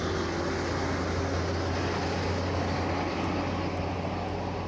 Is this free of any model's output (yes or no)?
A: yes